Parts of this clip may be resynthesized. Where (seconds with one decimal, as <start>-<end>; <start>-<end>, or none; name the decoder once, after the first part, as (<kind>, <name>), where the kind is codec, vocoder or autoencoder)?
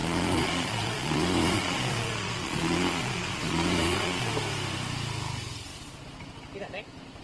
0.0-4.3 (vocoder, Vocos)